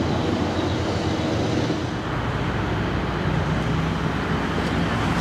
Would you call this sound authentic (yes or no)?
yes